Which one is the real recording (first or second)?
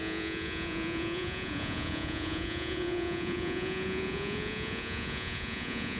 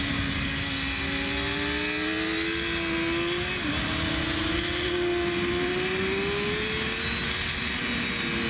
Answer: second